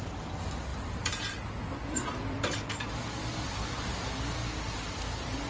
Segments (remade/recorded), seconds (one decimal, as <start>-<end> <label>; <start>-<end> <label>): 0.0-0.7 recorded; 0.7-4.0 remade; 4.0-5.5 recorded